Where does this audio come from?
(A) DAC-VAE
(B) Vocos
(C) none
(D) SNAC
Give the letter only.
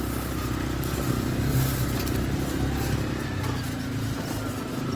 C